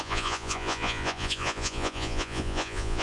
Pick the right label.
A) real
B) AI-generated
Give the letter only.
B